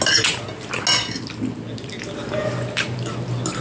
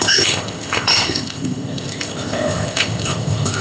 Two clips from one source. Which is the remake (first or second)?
second